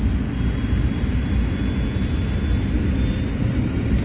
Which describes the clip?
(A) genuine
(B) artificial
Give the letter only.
A